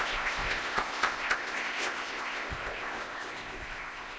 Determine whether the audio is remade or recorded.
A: remade